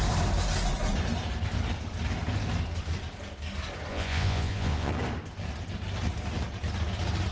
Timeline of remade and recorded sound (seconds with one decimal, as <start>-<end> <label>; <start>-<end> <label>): 0.0-3.9 recorded; 3.9-4.9 remade; 4.9-7.3 recorded